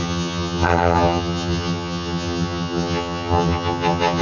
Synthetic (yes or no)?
yes